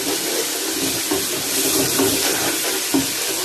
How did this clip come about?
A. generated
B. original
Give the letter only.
B